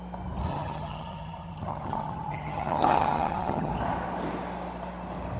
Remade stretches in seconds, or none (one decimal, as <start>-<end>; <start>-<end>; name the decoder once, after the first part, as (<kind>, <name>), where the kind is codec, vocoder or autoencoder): 0.5-3.7 (vocoder, HiFi-GAN)